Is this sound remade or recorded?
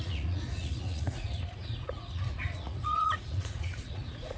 remade